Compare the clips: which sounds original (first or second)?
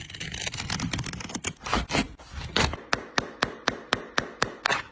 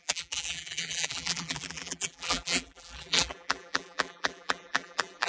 first